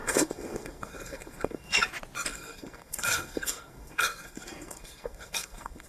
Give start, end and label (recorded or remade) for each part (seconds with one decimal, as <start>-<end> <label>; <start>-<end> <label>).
0.0-1.8 remade; 1.8-2.3 recorded; 2.3-5.9 remade